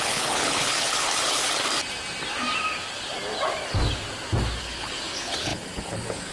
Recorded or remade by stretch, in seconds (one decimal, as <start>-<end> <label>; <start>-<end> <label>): 0.0-1.4 remade; 1.4-4.6 recorded; 4.6-6.3 remade